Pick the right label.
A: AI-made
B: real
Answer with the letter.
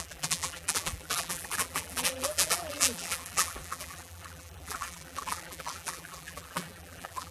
A